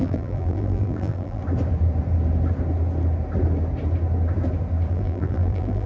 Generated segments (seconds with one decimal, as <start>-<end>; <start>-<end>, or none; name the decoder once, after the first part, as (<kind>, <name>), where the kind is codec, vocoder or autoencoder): 0.0-1.4 (vocoder, BigVGAN v2); 4.9-5.9